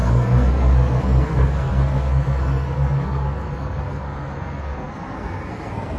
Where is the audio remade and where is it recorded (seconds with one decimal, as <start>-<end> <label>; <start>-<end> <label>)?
0.0-6.0 remade

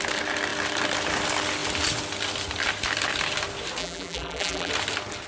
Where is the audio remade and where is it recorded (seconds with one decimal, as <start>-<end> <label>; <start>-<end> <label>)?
0.0-3.8 recorded; 3.8-4.7 remade; 4.7-5.3 recorded

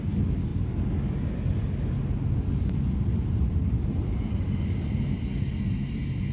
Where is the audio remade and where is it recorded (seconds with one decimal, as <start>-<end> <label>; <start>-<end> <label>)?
0.0-6.3 recorded

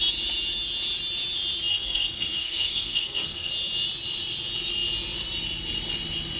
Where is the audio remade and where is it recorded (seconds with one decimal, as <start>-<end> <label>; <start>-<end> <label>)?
0.0-1.7 recorded; 1.7-3.5 remade; 3.5-6.4 recorded

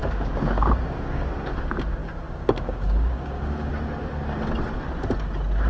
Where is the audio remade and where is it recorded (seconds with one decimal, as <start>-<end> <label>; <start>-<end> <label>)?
0.0-1.3 remade; 1.3-2.0 recorded; 2.0-3.7 remade; 3.7-5.7 recorded

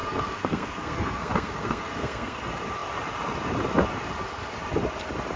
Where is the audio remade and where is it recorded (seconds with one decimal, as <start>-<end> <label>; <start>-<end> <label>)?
0.0-2.4 remade; 2.4-5.4 recorded

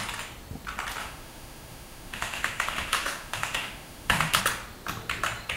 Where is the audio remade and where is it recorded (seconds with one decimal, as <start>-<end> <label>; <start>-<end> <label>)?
0.0-1.0 recorded; 1.0-4.4 remade; 4.4-5.6 recorded